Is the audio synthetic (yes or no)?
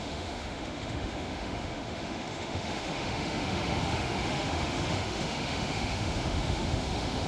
yes